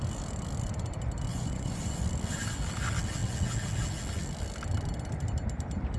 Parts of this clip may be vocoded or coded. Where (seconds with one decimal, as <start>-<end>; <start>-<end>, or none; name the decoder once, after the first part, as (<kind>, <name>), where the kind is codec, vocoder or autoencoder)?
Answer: 1.3-2.0 (vocoder, Vocos)